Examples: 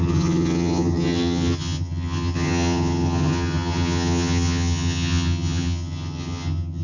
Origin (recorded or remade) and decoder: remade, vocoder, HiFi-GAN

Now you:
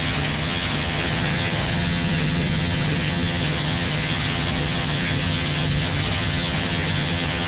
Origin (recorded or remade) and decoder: remade, vocoder, HiFi-GAN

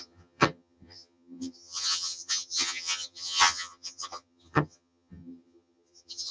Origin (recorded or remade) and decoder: remade, vocoder, HiFi-GAN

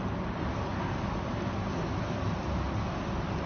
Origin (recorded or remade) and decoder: recorded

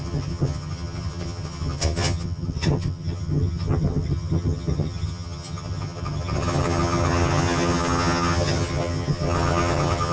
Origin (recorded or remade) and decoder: remade, vocoder, HiFi-GAN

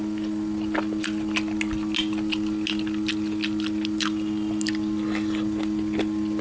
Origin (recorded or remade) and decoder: recorded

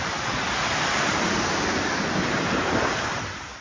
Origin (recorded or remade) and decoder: recorded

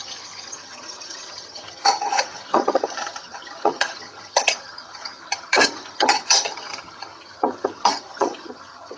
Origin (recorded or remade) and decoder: remade, vocoder, HiFi-GAN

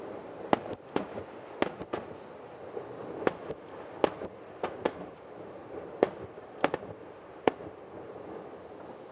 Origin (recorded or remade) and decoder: recorded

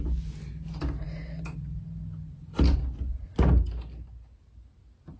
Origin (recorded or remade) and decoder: recorded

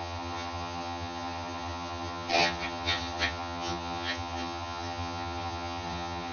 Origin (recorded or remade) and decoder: remade, vocoder, HiFi-GAN